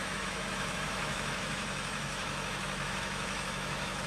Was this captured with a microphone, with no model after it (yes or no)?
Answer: no